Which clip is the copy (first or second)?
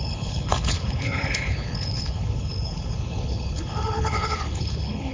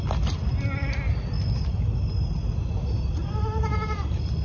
first